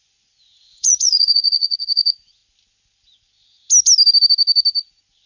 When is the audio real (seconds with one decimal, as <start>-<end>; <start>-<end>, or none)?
2.4-5.3